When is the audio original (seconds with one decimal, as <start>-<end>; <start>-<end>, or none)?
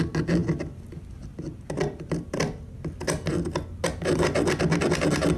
0.0-5.4